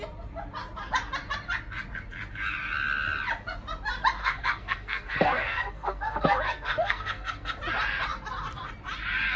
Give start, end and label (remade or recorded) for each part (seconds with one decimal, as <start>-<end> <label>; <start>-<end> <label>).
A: 0.0-4.2 recorded; 4.2-7.6 remade; 7.6-9.4 recorded